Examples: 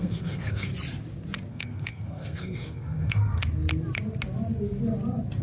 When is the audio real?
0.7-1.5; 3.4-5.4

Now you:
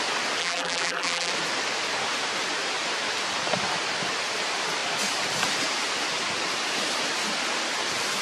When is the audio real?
0.0-0.4; 1.3-8.2

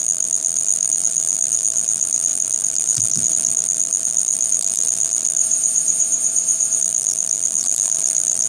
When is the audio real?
5.4-6.8

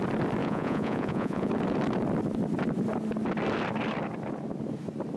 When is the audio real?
0.0-0.4; 1.5-5.2